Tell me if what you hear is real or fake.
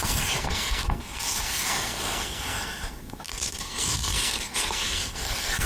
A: fake